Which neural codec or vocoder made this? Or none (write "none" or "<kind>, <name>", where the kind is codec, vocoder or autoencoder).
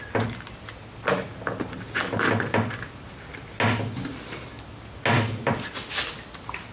none